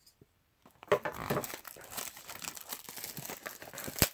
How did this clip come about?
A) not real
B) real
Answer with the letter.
B